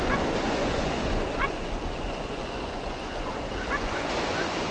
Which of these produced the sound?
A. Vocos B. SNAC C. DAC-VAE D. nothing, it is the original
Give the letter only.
A